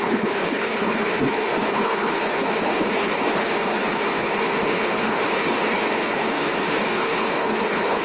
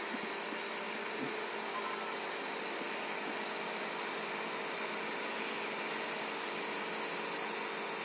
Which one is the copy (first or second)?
first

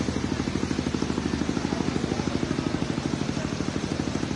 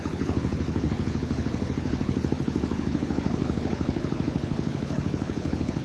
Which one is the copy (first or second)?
second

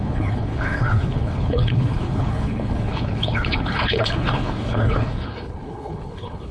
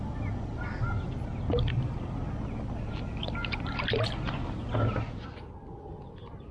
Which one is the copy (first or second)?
first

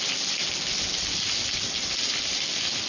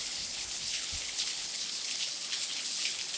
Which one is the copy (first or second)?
second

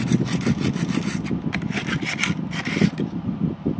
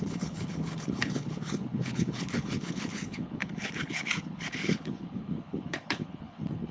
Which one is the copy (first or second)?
second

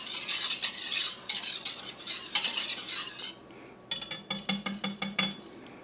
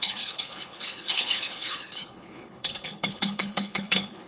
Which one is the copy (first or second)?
second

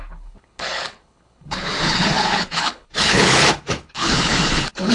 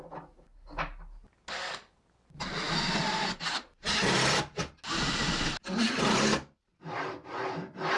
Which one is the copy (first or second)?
first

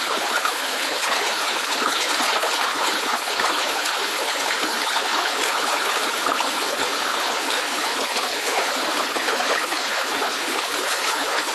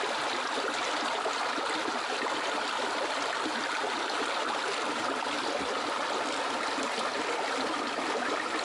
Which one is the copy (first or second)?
first